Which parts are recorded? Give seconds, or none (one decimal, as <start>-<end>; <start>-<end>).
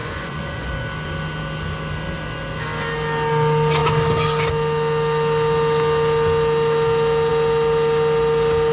0.7-8.7